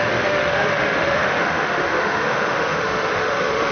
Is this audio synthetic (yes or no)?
yes